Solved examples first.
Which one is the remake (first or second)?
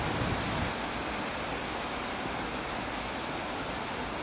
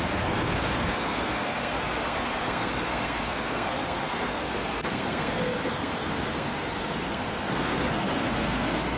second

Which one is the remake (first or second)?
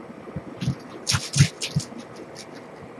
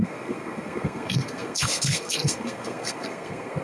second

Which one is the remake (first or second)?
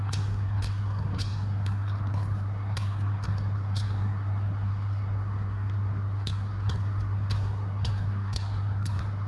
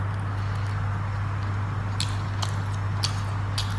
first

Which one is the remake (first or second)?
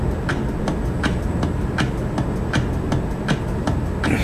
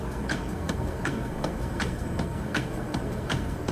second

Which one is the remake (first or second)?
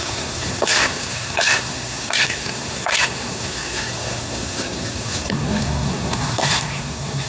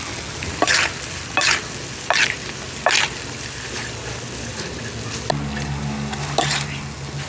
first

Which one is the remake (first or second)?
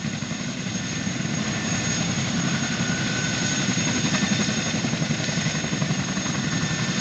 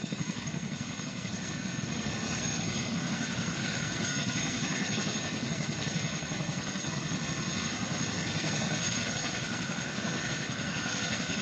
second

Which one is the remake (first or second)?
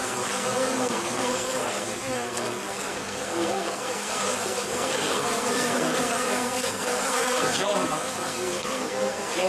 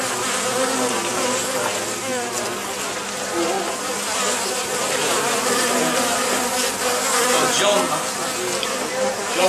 first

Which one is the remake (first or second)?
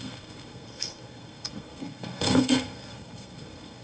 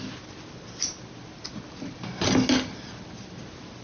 first